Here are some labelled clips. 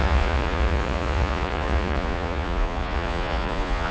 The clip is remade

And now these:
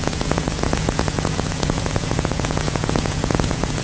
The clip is remade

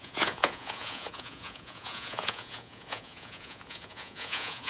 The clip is remade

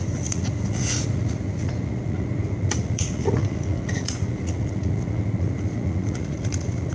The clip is remade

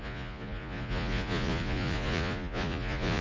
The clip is remade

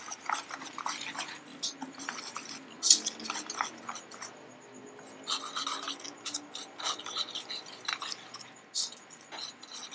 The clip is recorded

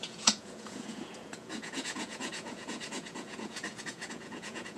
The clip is remade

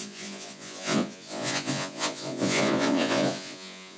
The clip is remade